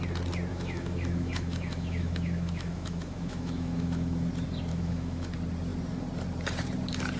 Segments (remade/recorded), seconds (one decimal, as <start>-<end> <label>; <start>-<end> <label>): 0.0-0.5 recorded; 0.5-4.3 remade; 4.3-4.7 recorded; 4.7-5.3 remade; 5.3-7.2 recorded